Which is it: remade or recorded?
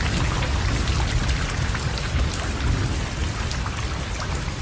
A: recorded